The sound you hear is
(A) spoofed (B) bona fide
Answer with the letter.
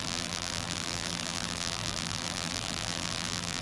A